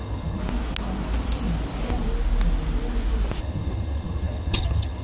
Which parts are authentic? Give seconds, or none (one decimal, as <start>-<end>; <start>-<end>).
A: 0.4-3.4